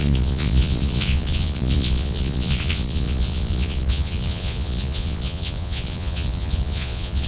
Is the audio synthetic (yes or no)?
yes